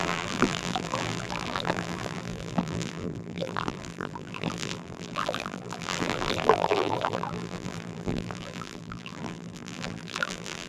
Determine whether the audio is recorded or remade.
remade